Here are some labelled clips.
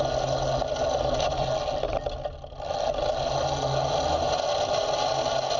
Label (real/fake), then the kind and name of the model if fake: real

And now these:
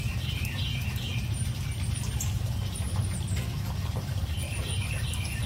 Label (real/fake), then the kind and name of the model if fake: real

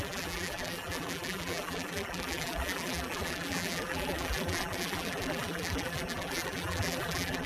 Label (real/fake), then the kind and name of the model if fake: fake, vocoder, BigVGAN v2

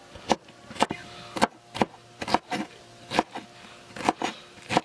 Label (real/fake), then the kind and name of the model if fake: real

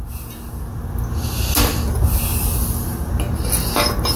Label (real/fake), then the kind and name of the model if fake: real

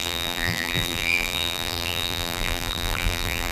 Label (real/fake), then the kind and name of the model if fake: fake, vocoder, BigVGAN v2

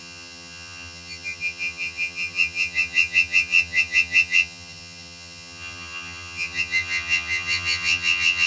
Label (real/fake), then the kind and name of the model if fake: fake, vocoder, HiFi-GAN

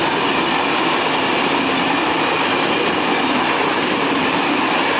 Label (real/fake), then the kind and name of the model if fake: real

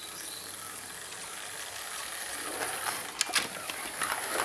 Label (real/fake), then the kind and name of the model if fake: real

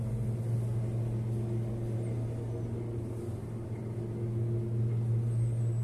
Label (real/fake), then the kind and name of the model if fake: real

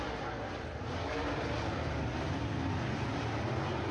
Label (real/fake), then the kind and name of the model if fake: real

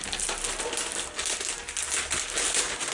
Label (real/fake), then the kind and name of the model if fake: real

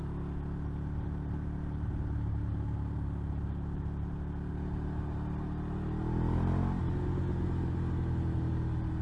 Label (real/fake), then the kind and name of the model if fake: real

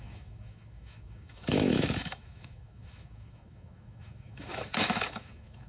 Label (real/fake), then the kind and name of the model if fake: fake, autoencoder, DAC-VAE